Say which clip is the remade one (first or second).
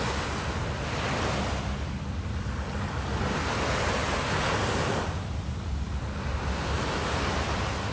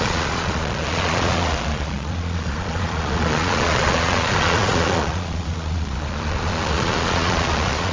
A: second